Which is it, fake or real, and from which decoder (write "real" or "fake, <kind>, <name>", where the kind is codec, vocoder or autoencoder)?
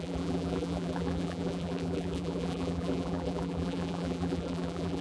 fake, vocoder, BigVGAN v2